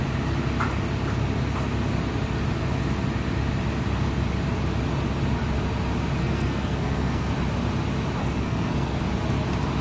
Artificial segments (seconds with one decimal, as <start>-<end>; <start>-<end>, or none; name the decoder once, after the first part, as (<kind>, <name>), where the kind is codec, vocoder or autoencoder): 6.2-7.3 (codec, SNAC); 8.2-9.0